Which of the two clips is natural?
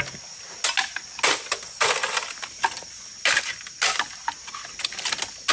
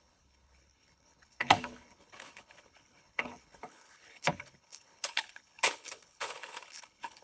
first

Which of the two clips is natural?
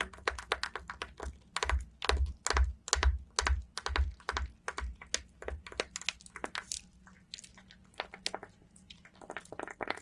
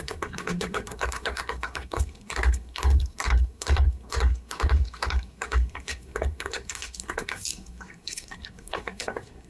first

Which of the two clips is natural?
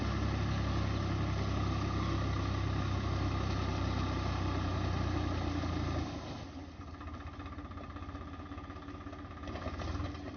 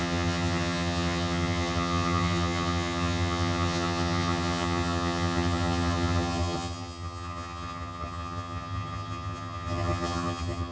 first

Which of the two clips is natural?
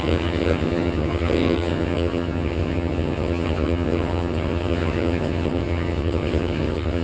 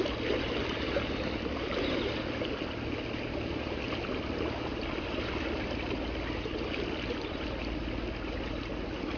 second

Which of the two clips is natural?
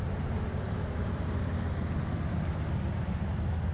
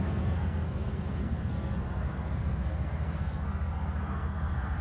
first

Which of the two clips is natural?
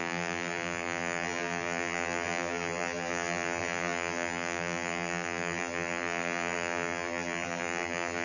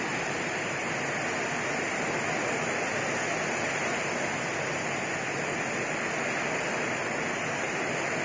second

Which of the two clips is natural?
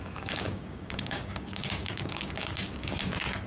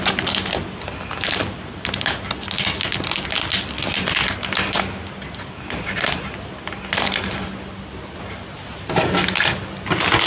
second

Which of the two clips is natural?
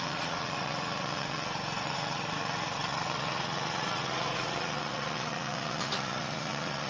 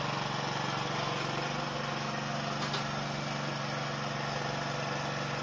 second